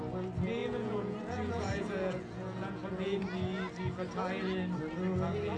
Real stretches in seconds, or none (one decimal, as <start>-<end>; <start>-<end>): 0.0-0.6; 3.2-5.6